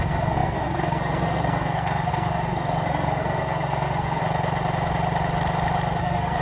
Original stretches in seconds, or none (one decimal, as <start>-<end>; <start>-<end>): 4.2-6.0